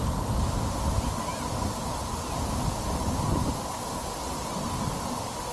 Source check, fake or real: real